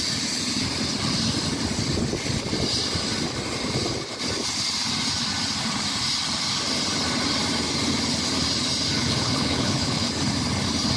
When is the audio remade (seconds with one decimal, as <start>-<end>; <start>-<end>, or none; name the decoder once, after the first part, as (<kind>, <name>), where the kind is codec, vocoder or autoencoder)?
8.9-10.1 (codec, HILCodec)